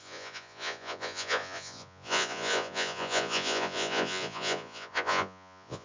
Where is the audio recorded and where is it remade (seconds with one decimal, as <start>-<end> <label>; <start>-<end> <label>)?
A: 0.0-5.8 remade